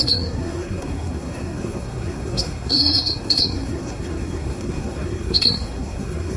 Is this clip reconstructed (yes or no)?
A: yes